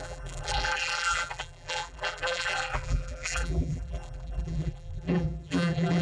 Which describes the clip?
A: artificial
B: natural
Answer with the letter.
A